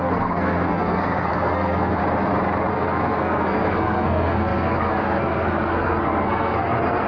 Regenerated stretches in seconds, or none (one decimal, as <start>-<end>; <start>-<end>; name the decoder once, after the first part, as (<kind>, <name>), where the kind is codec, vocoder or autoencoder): 0.0-2.0 (codec, SNAC); 2.7-7.1